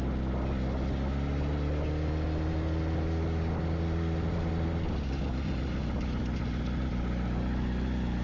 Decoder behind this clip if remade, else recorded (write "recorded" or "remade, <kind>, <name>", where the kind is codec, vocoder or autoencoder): recorded